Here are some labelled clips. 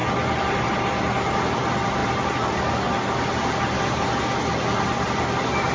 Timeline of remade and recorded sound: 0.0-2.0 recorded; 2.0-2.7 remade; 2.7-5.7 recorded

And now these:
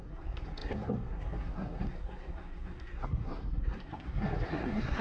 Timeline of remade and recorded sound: 0.0-5.0 remade

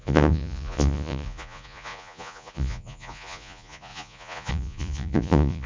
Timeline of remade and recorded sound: 0.0-5.7 remade

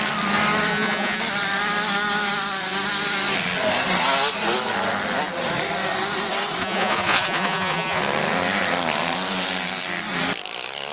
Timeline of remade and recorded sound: 0.0-0.7 recorded; 0.7-1.2 remade; 1.2-6.6 recorded; 6.6-8.0 remade; 8.0-10.9 recorded

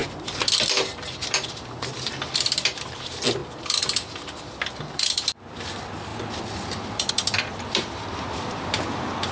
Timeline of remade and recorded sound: 0.0-9.3 remade

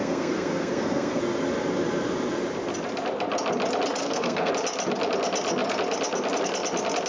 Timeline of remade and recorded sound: 0.0-1.2 remade; 1.2-4.0 recorded; 4.0-4.5 remade; 4.5-7.1 recorded

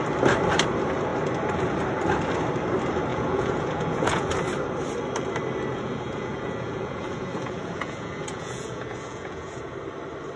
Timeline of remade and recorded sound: 0.0-3.1 recorded; 3.1-4.3 remade; 4.3-5.7 recorded; 5.7-9.6 remade; 9.6-10.4 recorded

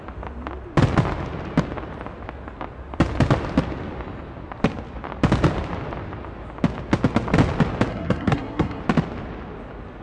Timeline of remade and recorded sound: 0.0-7.9 recorded; 7.9-8.8 remade; 8.8-10.0 recorded